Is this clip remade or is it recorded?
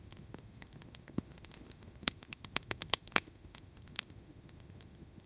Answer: remade